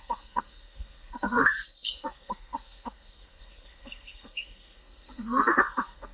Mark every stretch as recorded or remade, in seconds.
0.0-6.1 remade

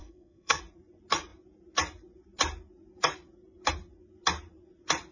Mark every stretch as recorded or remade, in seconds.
0.0-0.6 remade; 0.6-5.1 recorded

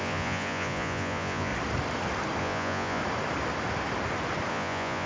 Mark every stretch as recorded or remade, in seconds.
0.0-1.5 remade; 1.5-2.4 recorded; 2.4-3.0 remade; 3.0-4.5 recorded; 4.5-5.1 remade

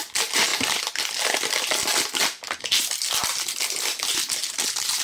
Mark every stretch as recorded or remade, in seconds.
0.0-5.0 recorded

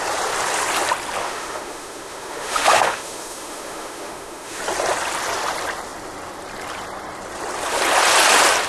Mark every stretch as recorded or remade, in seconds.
0.0-1.2 recorded; 1.2-4.6 remade; 4.6-8.7 recorded

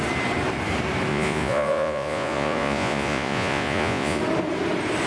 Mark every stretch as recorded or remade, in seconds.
0.0-1.1 recorded; 1.1-4.2 remade; 4.2-5.1 recorded

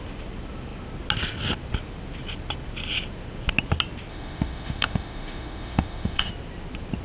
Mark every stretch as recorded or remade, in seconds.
0.0-4.1 recorded; 4.1-6.3 remade; 6.3-7.0 recorded

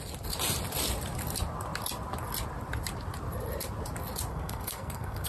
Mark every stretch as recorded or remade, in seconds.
0.0-4.3 recorded; 4.3-5.3 remade